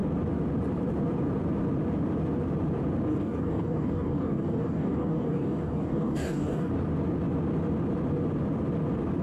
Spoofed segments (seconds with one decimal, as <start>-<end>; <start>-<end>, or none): 3.1-6.7